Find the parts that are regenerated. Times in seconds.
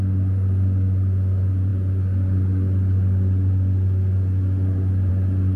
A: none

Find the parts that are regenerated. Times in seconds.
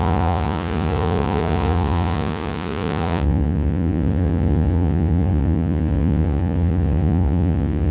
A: 0.0-7.9 (vocoder, Vocos)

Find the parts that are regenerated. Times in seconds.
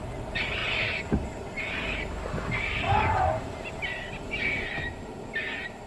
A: none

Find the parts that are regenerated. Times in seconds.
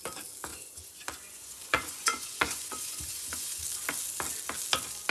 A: 0.5-3.6 (vocoder, Vocos)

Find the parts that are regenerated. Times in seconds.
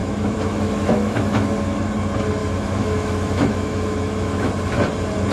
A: 0.0-1.8 (autoencoder, DAC-VAE); 2.4-4.5